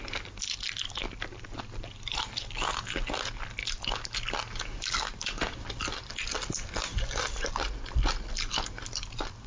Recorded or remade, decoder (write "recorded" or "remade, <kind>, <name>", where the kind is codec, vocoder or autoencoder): recorded